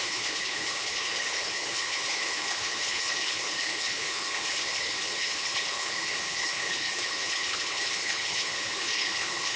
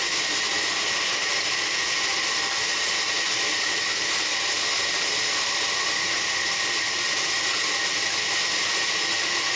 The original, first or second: second